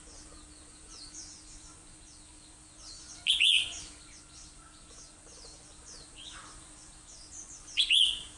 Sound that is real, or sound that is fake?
fake